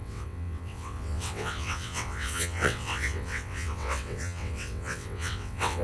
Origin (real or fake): fake